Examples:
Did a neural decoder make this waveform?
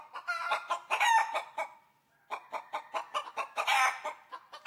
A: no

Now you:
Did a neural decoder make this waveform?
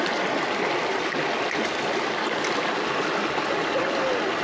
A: no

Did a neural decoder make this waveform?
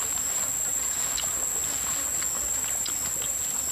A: no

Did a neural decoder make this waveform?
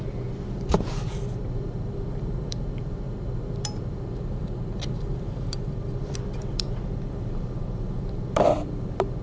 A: yes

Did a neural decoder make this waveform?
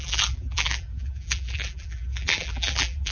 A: yes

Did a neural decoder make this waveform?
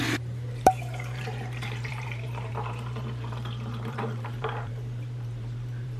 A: yes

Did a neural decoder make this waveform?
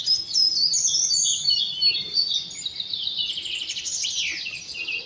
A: no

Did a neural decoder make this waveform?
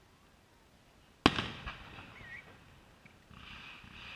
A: no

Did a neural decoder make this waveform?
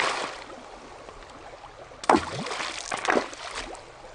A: no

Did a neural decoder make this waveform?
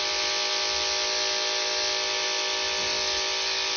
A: no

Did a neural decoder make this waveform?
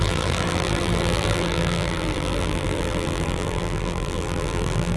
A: yes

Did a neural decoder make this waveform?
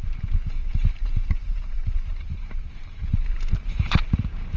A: yes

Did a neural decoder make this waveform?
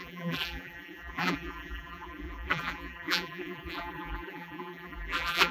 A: yes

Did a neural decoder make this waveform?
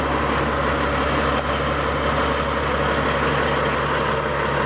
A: no